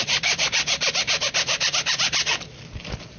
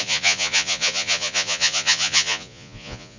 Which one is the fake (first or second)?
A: second